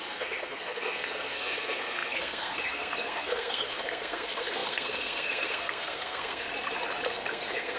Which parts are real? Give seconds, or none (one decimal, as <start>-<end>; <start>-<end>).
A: 6.5-7.1